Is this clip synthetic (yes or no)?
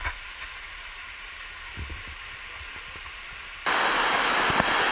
no